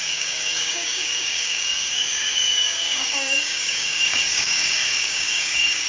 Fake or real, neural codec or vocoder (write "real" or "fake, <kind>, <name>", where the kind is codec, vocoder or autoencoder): fake, codec, DAC